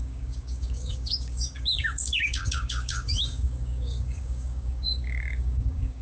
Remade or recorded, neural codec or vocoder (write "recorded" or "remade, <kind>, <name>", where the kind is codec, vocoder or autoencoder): remade, codec, DAC